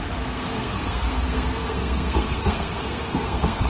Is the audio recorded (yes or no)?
no